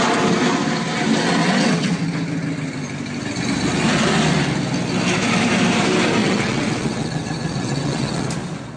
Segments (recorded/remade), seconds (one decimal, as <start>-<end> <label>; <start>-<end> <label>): 0.0-1.4 recorded; 1.4-1.9 remade; 1.9-6.2 recorded; 6.2-8.3 remade; 8.3-8.8 recorded